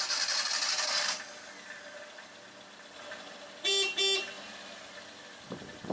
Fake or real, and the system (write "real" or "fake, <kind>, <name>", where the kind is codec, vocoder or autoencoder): fake, vocoder, BigVGAN v2